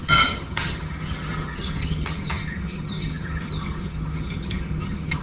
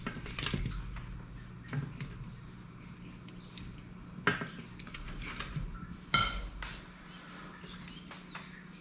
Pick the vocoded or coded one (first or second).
first